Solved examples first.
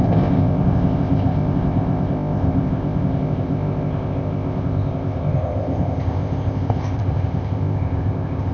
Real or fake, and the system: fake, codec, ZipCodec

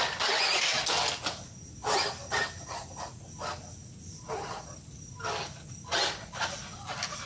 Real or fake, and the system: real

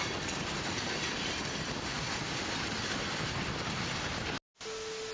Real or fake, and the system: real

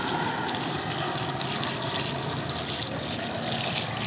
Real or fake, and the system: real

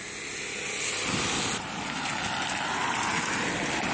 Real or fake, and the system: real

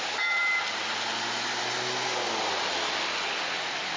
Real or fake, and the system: real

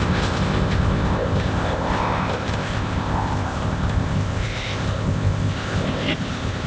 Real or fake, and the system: fake, codec, ZipCodec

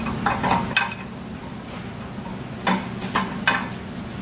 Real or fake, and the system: real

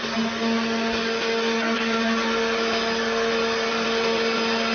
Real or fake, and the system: real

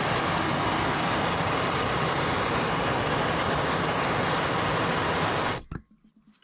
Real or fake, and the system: real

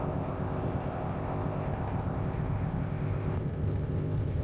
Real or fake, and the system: fake, codec, ZipCodec